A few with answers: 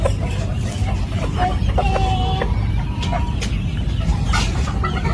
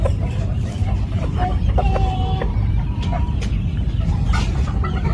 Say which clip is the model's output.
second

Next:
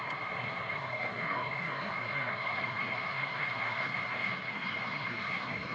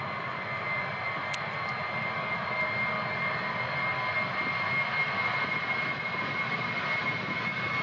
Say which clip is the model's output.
first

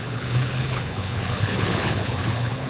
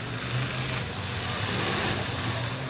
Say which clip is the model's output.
first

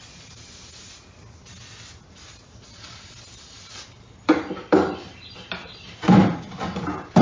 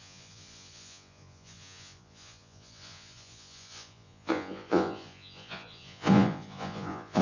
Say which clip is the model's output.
second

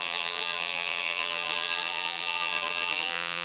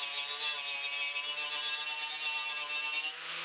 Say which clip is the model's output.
first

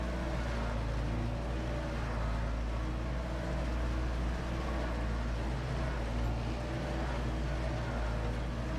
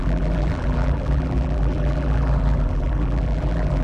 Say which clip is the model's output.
second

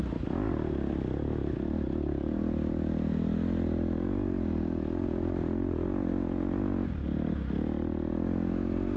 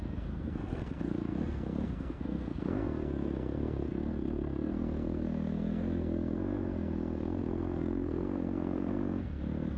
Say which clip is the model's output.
second